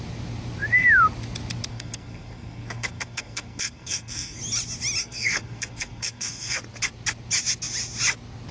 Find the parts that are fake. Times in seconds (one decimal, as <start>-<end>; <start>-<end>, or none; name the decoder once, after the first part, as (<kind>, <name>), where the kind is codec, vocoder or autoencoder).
1.7-4.4 (codec, SNAC); 5.0-6.6